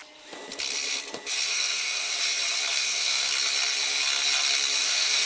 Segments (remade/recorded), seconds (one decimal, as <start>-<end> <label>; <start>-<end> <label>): 0.0-1.5 recorded; 1.5-2.1 remade; 2.1-2.7 recorded; 2.7-3.3 remade; 3.3-4.8 recorded; 4.8-5.3 remade